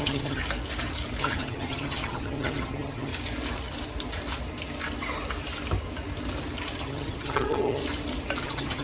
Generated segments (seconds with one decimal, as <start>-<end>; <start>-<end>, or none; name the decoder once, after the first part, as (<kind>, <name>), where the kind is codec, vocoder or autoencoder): 0.0-0.4 (vocoder, HiFi-GAN); 1.2-3.1; 6.8-7.8; 8.4-8.8